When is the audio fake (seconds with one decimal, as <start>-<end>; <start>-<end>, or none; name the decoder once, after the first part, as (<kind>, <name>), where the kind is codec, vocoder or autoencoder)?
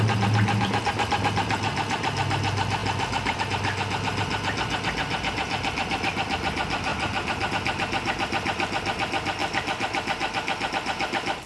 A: none